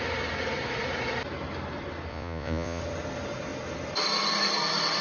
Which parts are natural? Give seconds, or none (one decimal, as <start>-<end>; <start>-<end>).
0.0-2.1; 2.8-5.0